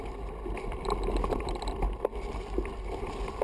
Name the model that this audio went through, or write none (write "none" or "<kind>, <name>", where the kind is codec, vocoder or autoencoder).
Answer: none